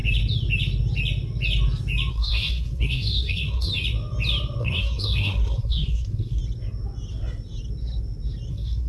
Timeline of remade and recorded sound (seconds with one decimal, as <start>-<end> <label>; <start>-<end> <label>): 0.0-2.1 recorded; 2.1-3.7 remade; 3.7-4.6 recorded; 4.6-6.4 remade; 6.4-8.5 recorded; 8.5-8.9 remade